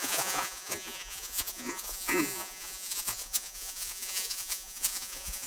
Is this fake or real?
fake